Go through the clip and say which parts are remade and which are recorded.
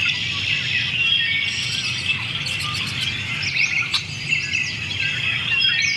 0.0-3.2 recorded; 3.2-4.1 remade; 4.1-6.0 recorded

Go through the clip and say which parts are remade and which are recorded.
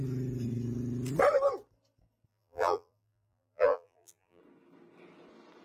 0.0-2.3 recorded; 2.3-4.4 remade; 4.4-5.6 recorded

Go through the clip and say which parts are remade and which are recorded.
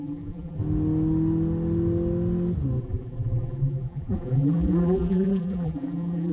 0.0-0.6 remade; 0.6-2.8 recorded; 2.8-6.3 remade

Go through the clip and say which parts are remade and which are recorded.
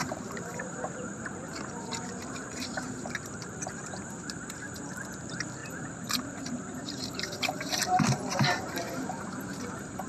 0.0-10.1 remade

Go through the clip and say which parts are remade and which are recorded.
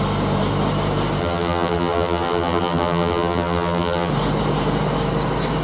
0.0-1.2 recorded; 1.2-4.1 remade; 4.1-5.6 recorded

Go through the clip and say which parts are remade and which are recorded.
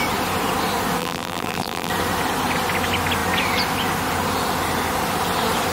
0.0-1.0 recorded; 1.0-1.9 remade; 1.9-5.7 recorded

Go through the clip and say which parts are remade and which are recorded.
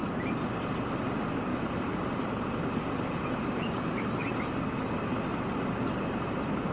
0.0-0.5 remade; 0.5-1.5 recorded; 1.5-4.3 remade; 4.3-6.7 recorded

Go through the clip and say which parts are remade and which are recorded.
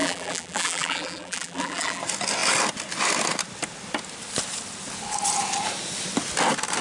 0.0-2.0 remade; 2.0-6.8 recorded